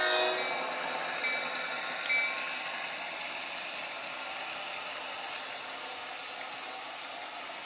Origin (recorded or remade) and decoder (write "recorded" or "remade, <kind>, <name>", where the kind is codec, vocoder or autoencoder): recorded